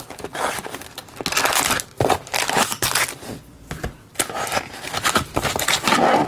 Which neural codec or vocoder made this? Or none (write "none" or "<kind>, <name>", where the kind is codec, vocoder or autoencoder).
none